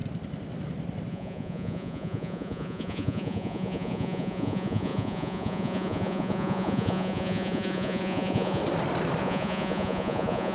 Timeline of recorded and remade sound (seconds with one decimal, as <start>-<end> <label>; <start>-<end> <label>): 0.0-1.1 recorded; 1.1-8.6 remade; 8.6-9.2 recorded; 9.2-10.5 remade